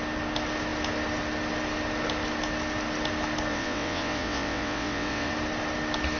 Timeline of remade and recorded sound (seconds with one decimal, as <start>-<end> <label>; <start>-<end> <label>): 0.0-3.5 recorded; 3.5-5.3 remade; 5.3-6.2 recorded